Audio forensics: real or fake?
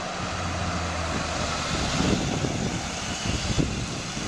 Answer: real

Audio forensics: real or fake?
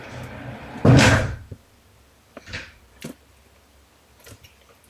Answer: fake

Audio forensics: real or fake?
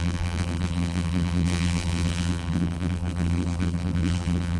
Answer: fake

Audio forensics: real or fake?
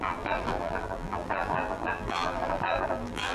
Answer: fake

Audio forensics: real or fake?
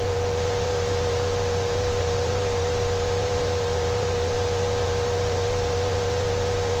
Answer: fake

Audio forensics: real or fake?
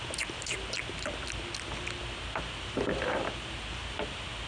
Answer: real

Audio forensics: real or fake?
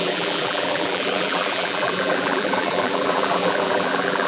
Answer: fake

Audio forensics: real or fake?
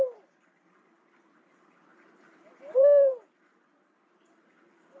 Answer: fake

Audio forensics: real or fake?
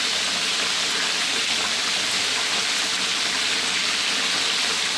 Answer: real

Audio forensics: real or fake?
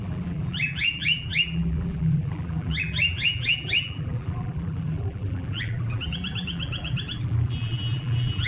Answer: fake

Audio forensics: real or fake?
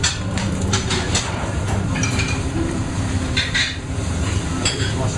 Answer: fake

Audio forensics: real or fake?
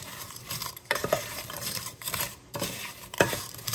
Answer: fake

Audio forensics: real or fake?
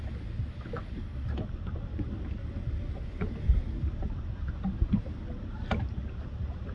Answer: real